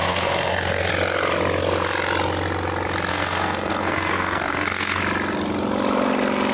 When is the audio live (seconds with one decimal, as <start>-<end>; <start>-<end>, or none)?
0.9-3.1; 5.0-6.5